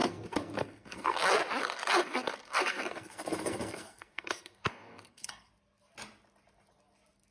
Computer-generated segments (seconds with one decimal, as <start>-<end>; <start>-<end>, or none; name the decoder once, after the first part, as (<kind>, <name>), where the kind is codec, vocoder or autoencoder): 0.0-1.2 (codec, SNAC); 1.6-5.5